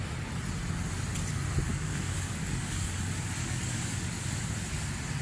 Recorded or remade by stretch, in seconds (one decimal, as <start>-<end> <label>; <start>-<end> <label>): 0.0-1.7 recorded; 1.7-3.0 remade; 3.0-3.4 recorded; 3.4-4.4 remade; 4.4-5.2 recorded